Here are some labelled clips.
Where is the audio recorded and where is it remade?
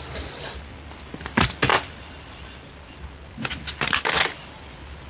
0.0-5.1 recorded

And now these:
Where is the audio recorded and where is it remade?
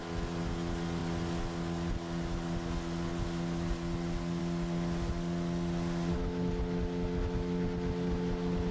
0.0-8.7 recorded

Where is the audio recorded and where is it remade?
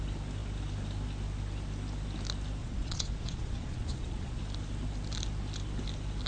0.0-2.6 recorded; 2.6-4.4 remade; 4.4-6.3 recorded